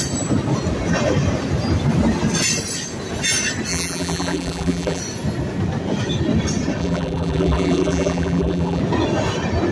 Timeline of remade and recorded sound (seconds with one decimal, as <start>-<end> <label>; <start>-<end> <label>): 0.0-3.7 recorded; 3.7-5.0 remade; 5.0-6.8 recorded; 6.8-8.8 remade; 8.8-9.7 recorded